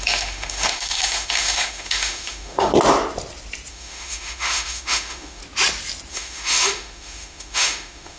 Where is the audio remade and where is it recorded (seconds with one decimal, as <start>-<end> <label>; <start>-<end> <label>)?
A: 0.0-2.7 remade; 2.7-3.7 recorded; 3.7-5.4 remade; 5.4-6.1 recorded; 6.1-8.2 remade